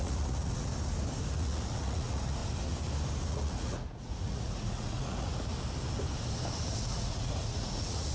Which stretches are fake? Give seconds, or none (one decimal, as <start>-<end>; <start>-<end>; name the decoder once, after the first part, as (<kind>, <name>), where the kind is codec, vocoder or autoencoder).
0.0-0.7 (vocoder, Vocos); 1.3-2.4; 3.3-5.5; 6.8-8.1